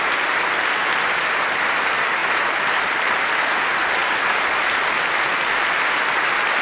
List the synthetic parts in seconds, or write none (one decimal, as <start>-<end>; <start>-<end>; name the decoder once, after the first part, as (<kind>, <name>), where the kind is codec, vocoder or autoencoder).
2.2-3.5 (vocoder, BigVGAN v2); 4.0-5.7